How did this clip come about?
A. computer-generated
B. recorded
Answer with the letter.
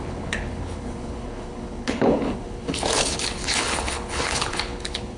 A